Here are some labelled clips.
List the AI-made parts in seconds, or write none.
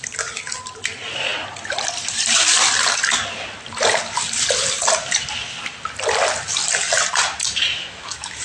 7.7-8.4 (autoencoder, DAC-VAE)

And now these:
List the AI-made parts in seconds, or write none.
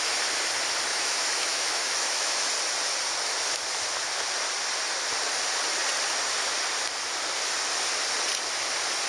0.9-2.5 (autoencoder, DAC-VAE)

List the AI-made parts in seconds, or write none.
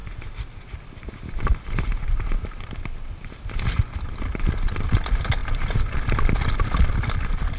none